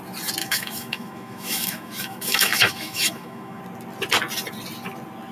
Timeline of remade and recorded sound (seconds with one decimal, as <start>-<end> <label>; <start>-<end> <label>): 0.0-0.4 recorded; 0.4-3.6 remade; 3.6-5.3 recorded